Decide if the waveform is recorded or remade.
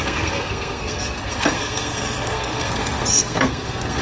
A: remade